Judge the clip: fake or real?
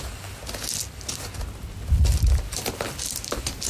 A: real